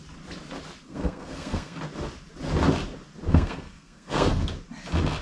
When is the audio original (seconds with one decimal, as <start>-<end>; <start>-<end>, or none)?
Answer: 0.0-0.9; 1.8-3.3; 4.5-5.2

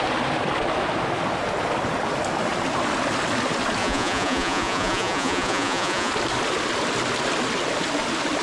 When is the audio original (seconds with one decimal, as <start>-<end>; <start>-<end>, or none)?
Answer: 0.0-3.8; 6.1-8.4

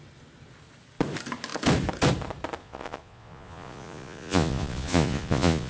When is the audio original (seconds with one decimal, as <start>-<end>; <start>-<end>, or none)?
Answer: 0.0-2.6

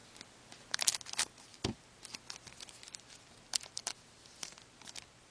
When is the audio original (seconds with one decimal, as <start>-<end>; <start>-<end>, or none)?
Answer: 0.0-5.3

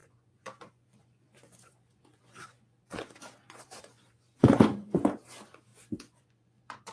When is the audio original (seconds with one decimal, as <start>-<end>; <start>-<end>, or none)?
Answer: none